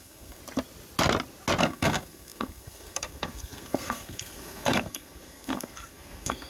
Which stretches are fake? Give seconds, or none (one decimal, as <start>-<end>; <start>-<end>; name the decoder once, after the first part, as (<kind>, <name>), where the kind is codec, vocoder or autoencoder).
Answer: 0.0-0.4 (codec, SNAC); 1.6-6.5